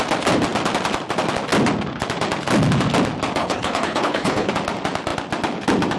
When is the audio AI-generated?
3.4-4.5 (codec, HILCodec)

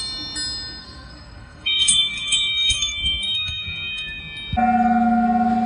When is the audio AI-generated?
0.8-4.2 (codec, SNAC)